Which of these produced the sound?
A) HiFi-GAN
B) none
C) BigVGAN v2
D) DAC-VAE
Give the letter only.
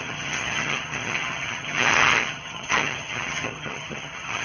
A